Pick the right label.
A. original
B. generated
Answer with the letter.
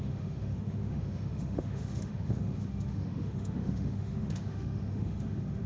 B